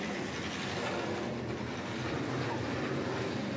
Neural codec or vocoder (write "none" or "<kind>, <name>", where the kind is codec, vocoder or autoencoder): none